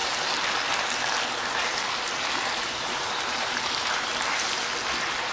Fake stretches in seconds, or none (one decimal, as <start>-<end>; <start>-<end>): 2.6-4.1